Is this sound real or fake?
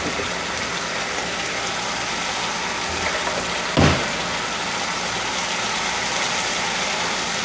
real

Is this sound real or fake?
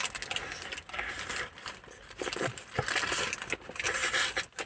real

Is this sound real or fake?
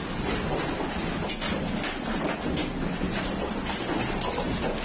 real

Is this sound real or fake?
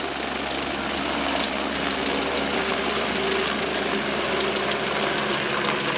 real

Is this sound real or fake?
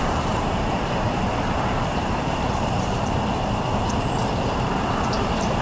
fake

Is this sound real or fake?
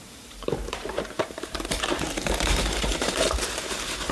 fake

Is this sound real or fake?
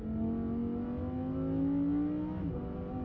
real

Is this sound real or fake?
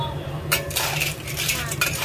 fake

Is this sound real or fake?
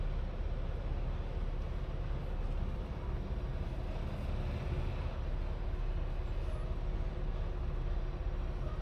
real